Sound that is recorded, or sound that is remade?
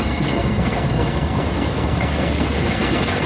remade